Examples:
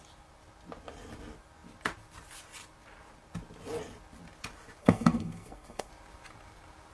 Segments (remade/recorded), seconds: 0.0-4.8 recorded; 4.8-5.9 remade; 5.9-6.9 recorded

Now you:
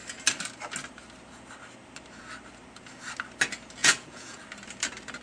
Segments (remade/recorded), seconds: 0.0-3.8 recorded; 3.8-4.4 remade; 4.4-5.2 recorded

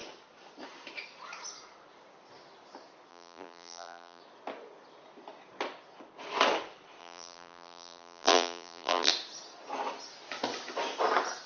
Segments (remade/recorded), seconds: 0.0-3.1 recorded; 3.1-4.2 remade; 4.2-7.0 recorded; 7.0-9.1 remade; 9.1-11.5 recorded

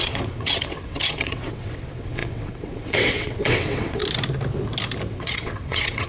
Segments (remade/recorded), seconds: 0.0-4.0 remade; 4.0-5.1 recorded; 5.1-6.1 remade

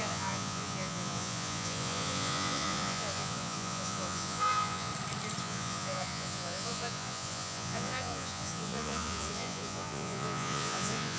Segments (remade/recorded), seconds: 0.0-4.9 remade; 4.9-5.4 recorded; 5.4-11.2 remade

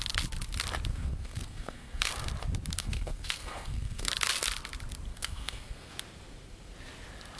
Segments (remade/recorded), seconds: 0.0-0.9 recorded; 0.9-2.1 remade; 2.1-2.8 recorded; 2.8-4.1 remade; 4.1-5.1 recorded; 5.1-5.9 remade; 5.9-7.4 recorded

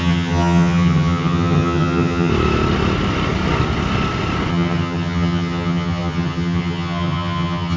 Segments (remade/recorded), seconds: 0.0-2.3 remade; 2.3-4.5 recorded; 4.5-7.8 remade